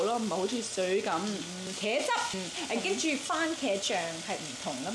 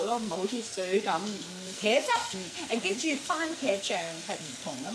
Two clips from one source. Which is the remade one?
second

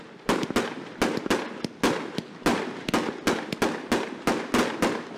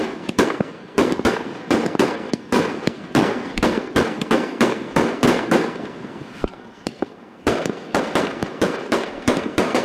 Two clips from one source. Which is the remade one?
second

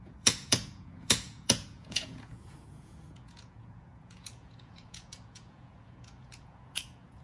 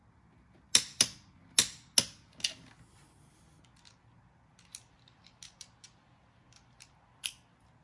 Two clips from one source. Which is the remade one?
first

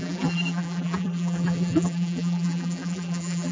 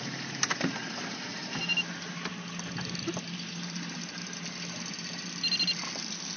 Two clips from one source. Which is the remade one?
first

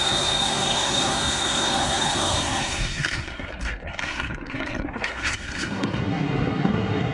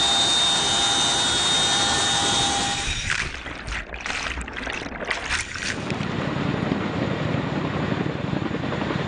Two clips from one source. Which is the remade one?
first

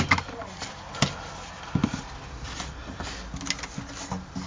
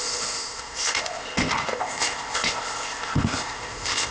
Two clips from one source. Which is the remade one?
second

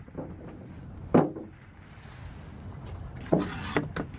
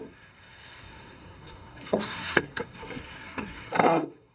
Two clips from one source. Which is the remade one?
second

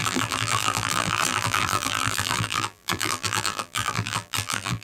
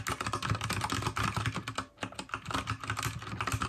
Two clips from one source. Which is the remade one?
first